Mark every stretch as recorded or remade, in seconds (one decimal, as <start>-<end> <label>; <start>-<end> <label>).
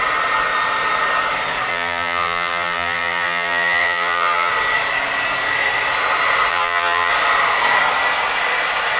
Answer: 0.0-1.7 recorded; 1.7-4.5 remade; 4.5-6.5 recorded; 6.5-7.1 remade; 7.1-9.0 recorded